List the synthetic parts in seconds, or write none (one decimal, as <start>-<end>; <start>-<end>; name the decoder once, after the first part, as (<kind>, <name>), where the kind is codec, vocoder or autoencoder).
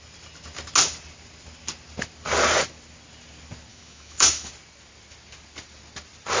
3.7-4.5 (autoencoder, DAC-VAE)